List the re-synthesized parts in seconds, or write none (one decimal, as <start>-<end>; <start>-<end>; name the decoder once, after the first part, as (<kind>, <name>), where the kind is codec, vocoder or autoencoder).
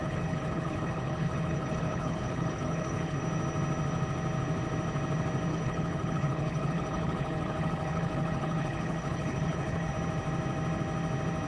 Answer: 0.0-3.2 (codec, HILCodec); 5.5-9.9